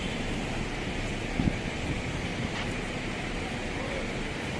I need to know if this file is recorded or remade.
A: remade